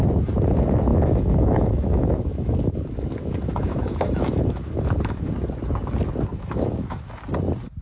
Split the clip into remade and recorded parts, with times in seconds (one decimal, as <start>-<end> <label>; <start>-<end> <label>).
0.0-0.9 recorded; 0.9-5.3 remade; 5.3-6.3 recorded; 6.3-7.0 remade; 7.0-7.8 recorded